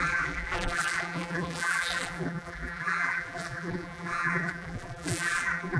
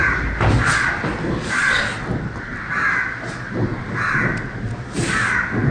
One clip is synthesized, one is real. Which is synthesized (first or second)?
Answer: first